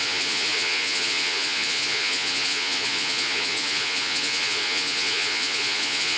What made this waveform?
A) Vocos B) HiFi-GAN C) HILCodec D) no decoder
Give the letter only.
A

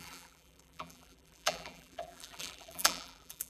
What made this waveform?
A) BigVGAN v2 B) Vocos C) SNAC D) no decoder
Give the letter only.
A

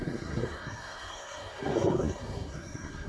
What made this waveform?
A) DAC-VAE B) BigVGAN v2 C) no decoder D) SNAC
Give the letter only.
D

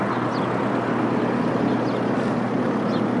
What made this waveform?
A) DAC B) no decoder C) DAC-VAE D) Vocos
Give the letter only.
B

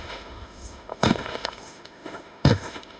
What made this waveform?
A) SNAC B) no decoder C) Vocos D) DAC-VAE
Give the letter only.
D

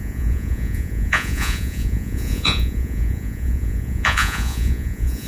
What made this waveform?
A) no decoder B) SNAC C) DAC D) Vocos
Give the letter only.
D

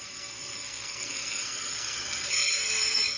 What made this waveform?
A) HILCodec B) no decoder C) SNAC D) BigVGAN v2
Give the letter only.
C